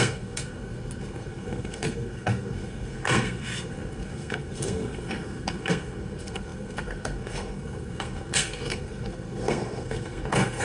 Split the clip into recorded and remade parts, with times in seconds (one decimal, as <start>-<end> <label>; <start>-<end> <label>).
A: 0.0-10.6 remade